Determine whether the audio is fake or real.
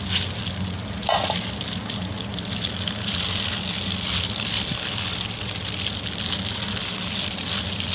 real